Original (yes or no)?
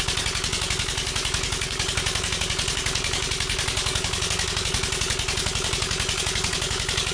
no